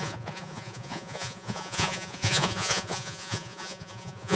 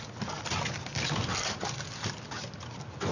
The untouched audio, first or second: second